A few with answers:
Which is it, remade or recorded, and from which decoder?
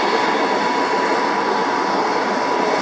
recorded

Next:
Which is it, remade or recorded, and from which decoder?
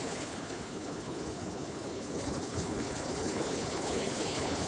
remade, codec, HILCodec